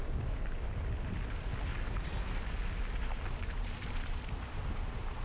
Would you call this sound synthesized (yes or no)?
yes